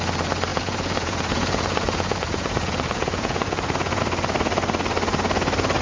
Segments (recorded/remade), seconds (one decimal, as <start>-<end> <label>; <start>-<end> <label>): 0.0-0.5 recorded; 0.5-4.0 remade; 4.0-5.8 recorded